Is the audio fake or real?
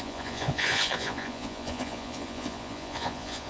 fake